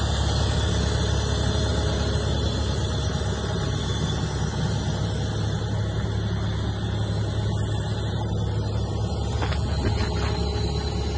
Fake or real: real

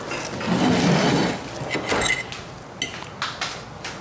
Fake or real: real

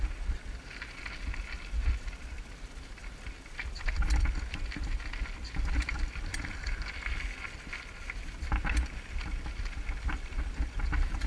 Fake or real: real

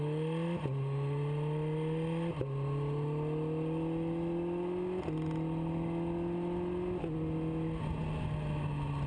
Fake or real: real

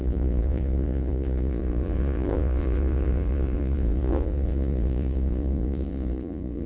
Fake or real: fake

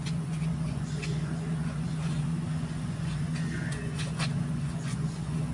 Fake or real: fake